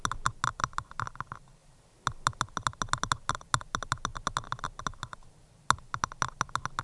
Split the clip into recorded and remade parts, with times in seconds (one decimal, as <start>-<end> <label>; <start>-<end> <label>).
0.0-6.8 recorded

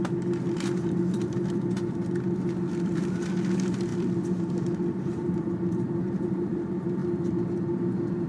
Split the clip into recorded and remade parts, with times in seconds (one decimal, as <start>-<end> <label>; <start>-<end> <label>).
0.0-8.3 remade

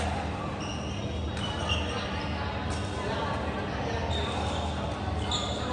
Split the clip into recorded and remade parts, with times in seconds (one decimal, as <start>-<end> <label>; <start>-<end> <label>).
0.0-5.7 recorded

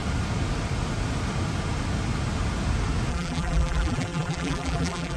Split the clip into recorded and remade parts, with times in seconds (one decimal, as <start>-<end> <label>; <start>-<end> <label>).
0.0-3.1 recorded; 3.1-5.2 remade